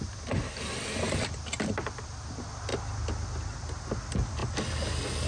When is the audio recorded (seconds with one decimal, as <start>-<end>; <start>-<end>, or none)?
0.0-5.3